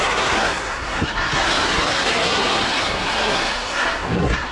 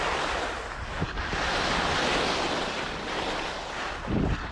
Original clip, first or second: second